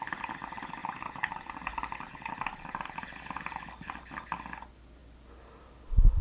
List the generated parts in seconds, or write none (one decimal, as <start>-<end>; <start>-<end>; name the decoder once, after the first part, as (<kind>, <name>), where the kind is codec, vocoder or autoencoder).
0.8-4.0 (vocoder, BigVGAN v2); 5.0-6.2